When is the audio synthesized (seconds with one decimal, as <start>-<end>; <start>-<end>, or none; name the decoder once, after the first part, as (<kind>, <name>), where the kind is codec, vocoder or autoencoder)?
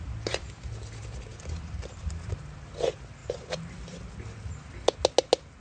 1.3-2.3 (vocoder, BigVGAN v2); 3.2-4.1